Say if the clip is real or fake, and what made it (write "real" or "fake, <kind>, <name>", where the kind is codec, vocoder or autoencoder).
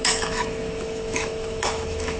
fake, autoencoder, DAC-VAE